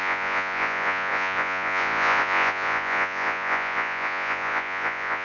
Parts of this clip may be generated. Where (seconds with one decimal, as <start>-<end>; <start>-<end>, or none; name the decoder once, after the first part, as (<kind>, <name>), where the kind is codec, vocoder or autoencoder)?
0.0-5.2 (vocoder, Vocos)

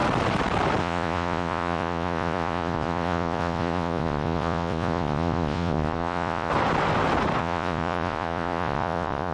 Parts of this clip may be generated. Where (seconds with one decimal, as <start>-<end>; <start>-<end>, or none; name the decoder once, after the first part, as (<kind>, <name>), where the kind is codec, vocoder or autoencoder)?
0.8-6.5 (vocoder, Vocos); 7.4-9.3

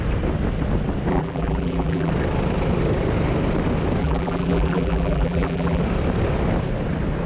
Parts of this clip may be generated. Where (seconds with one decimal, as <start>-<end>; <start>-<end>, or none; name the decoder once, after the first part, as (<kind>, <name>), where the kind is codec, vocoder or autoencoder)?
1.1-2.1 (vocoder, BigVGAN v2); 4.0-5.8

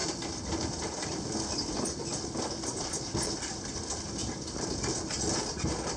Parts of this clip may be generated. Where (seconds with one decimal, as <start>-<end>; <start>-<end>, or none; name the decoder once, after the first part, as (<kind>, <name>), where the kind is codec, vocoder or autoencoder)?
none

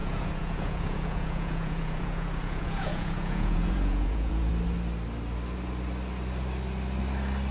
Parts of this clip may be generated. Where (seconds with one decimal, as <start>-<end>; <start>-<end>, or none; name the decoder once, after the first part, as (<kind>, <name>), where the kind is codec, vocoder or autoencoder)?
0.0-4.5 (vocoder, Vocos)

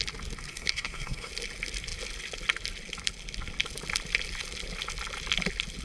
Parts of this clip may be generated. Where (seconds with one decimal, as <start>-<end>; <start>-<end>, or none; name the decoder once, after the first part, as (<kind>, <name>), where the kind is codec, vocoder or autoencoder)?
0.5-1.3 (codec, SNAC)